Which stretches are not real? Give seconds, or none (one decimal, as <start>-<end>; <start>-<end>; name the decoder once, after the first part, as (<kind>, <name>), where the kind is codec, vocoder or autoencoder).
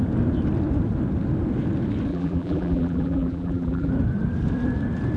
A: 2.1-3.9 (vocoder, BigVGAN v2)